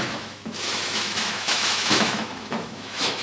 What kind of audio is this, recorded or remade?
remade